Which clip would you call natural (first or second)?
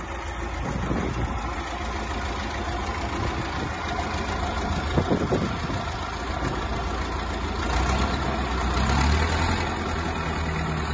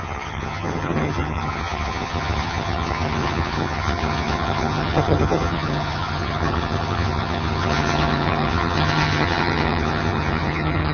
first